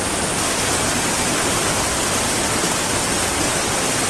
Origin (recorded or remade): recorded